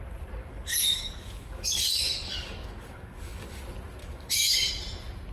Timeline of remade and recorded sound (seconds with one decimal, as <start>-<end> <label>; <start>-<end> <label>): 0.0-0.4 recorded; 0.4-3.6 remade; 3.6-4.0 recorded; 4.0-4.7 remade; 4.7-5.3 recorded